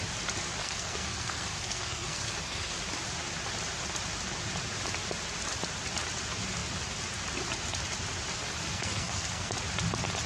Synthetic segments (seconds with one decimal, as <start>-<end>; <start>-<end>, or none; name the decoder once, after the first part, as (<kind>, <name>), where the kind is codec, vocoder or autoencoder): 0.6-2.8 (codec, SNAC); 8.7-9.5